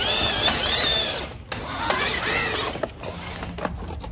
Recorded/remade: recorded